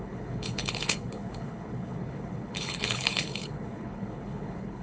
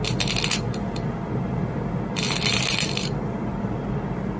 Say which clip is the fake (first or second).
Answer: first